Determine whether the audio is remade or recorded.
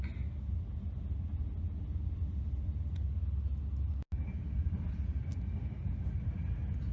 recorded